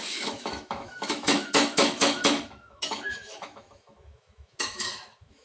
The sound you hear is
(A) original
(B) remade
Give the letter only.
B